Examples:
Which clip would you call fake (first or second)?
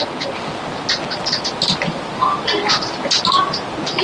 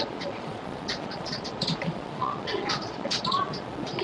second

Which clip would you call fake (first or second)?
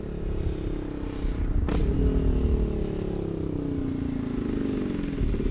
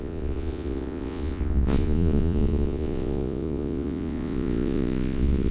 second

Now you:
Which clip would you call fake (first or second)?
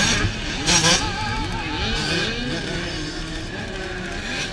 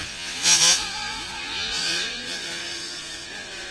second